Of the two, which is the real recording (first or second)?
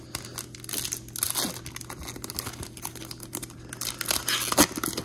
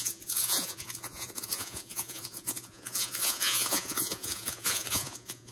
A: first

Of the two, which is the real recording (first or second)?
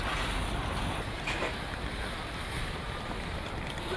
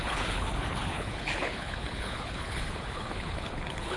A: first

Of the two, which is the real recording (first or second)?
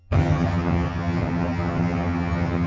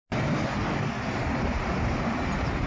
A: second